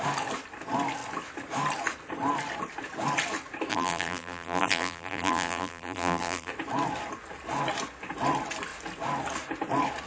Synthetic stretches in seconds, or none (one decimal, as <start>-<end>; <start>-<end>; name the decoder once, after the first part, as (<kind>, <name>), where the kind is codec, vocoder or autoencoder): 3.7-6.5 (vocoder, BigVGAN v2)